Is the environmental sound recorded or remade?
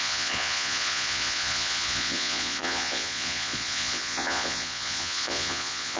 remade